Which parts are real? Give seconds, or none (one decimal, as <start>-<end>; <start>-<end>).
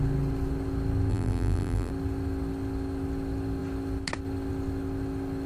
0.0-1.1; 1.9-5.5